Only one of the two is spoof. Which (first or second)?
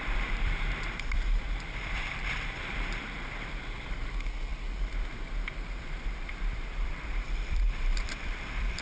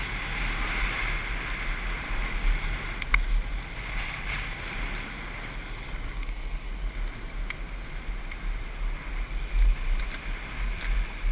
first